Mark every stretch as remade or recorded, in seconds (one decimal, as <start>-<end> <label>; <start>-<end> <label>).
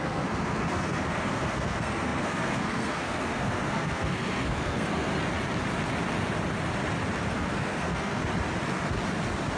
0.0-5.1 remade; 5.1-7.3 recorded; 7.3-8.2 remade; 8.2-9.6 recorded